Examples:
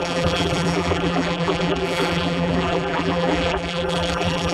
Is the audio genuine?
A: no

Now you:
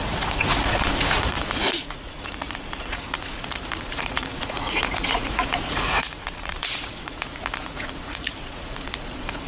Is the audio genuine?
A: no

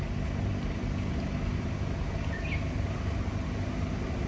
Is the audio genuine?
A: yes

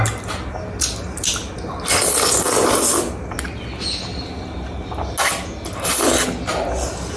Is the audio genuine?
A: yes